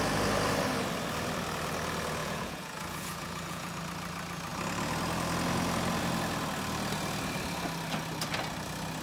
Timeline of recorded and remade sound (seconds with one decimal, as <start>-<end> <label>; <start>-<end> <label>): 0.0-2.2 recorded; 2.2-3.8 remade; 3.8-9.0 recorded